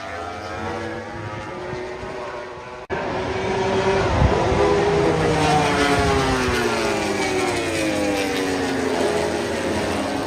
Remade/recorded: recorded